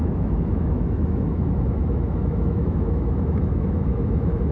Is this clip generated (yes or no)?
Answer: yes